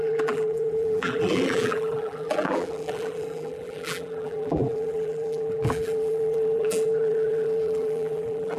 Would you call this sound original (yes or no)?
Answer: no